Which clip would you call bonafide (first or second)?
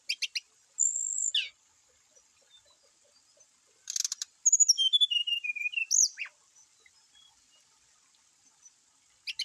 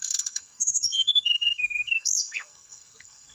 first